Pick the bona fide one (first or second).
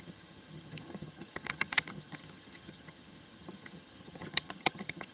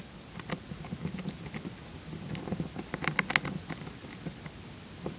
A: second